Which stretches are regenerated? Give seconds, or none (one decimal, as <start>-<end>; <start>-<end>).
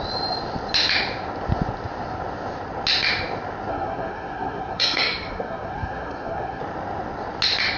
3.7-6.6